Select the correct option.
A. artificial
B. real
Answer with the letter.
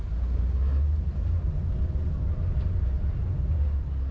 B